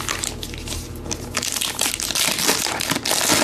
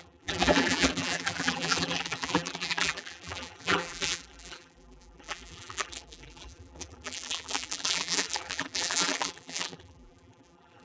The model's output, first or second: second